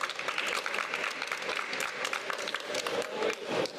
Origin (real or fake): real